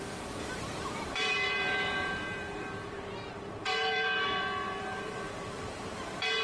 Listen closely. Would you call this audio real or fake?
fake